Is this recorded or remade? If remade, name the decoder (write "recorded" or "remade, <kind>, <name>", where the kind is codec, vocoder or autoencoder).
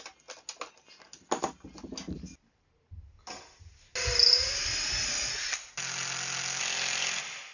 recorded